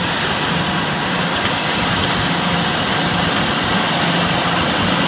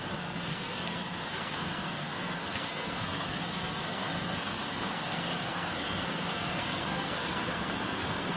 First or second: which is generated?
second